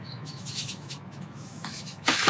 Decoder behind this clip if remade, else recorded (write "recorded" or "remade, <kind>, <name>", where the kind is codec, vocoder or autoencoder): remade, autoencoder, DAC-VAE